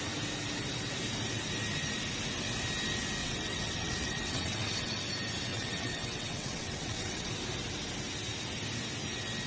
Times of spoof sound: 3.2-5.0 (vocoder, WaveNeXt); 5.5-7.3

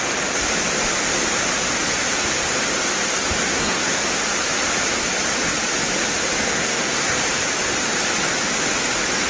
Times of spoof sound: 3.5-4.0 (codec, SNAC); 6.5-7.2